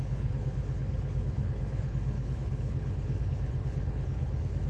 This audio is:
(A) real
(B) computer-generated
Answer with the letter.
B